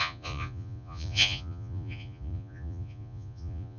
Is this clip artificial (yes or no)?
yes